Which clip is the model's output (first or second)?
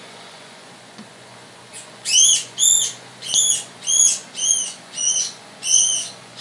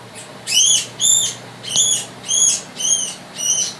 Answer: first